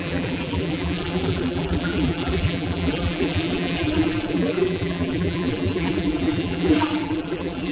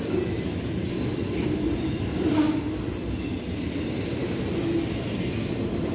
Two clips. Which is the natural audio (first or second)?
second